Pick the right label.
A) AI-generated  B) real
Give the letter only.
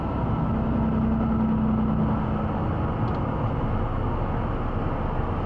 B